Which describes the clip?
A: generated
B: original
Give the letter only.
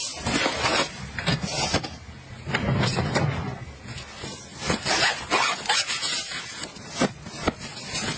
B